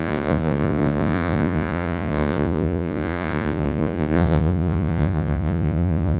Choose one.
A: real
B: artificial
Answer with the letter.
B